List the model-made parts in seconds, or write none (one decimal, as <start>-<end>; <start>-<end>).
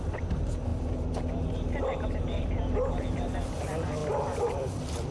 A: 0.0-5.1